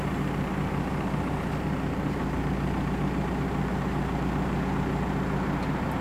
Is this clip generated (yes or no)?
yes